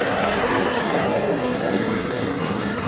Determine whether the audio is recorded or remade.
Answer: remade